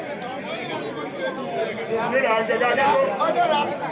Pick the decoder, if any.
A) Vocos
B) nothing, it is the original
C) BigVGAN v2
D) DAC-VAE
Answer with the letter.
B